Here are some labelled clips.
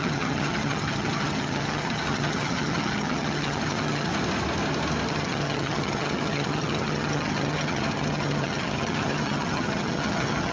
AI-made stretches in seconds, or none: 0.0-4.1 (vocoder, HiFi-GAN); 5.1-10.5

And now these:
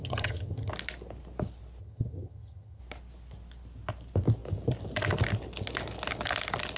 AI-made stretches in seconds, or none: 0.0-0.7 (vocoder, HiFi-GAN); 1.8-2.8

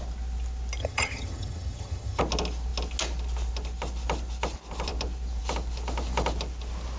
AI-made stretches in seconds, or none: 0.8-2.2 (vocoder, HiFi-GAN)